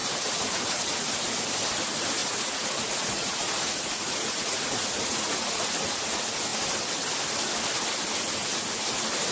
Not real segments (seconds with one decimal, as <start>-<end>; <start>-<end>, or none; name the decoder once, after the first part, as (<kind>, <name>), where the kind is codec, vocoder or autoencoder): 0.0-1.1 (vocoder, Vocos); 2.2-5.7